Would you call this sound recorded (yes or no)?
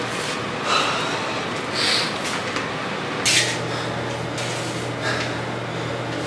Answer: yes